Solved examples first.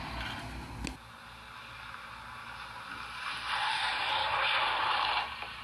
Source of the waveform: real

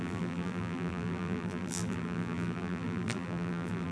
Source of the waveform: fake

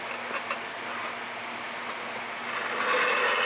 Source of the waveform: real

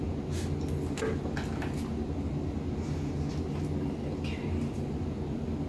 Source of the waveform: real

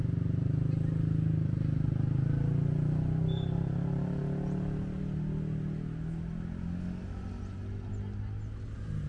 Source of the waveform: real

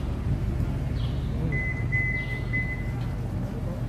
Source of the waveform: real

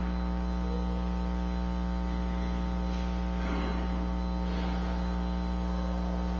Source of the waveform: real